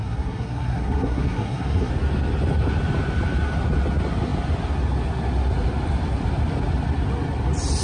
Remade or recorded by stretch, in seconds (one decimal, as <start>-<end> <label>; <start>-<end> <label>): 0.0-1.9 remade; 1.9-7.8 recorded